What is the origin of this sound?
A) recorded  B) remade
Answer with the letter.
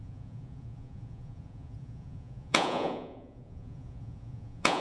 B